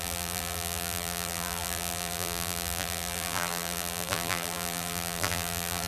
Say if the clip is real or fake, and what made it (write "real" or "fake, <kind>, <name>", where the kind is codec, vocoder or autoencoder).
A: fake, vocoder, BigVGAN v2